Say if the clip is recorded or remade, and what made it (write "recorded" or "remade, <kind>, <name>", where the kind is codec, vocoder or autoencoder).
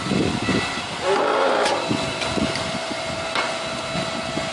recorded